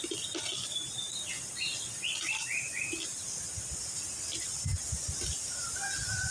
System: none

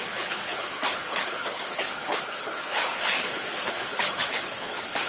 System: codec, HILCodec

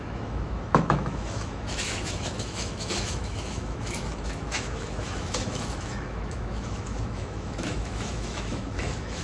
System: autoencoder, DAC-VAE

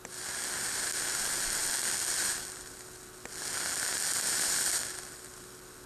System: none